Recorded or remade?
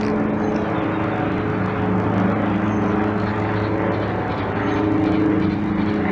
recorded